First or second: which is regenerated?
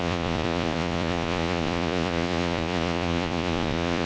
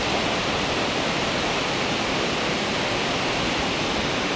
first